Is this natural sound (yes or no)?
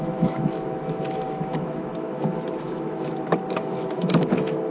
no